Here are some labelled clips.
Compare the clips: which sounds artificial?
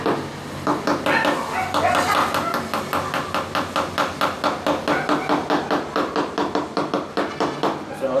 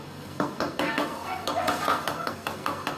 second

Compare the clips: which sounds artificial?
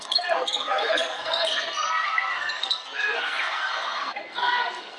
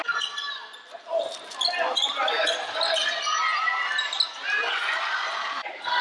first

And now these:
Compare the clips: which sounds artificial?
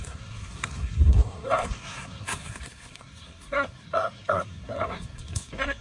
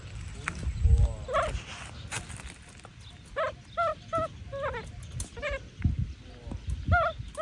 first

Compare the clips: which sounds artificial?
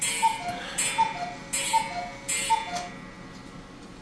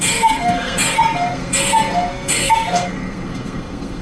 second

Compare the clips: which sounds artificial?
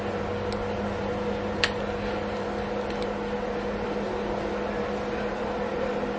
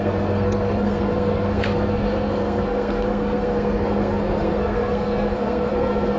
second